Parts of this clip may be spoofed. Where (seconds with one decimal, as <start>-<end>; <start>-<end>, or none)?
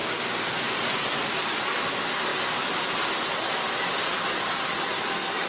0.0-0.8